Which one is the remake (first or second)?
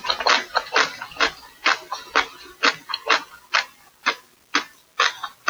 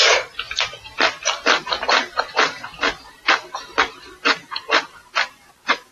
second